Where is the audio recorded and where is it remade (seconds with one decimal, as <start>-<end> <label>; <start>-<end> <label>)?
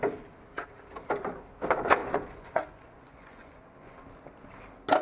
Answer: 0.0-2.0 recorded; 2.0-4.0 remade; 4.0-5.0 recorded